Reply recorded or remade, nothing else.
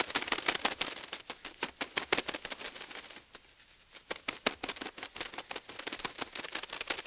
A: recorded